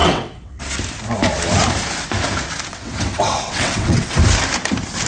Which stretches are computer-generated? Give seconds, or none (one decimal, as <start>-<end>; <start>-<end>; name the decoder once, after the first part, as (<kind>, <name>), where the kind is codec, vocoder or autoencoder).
0.0-0.6 (vocoder, WaveNeXt); 2.7-4.2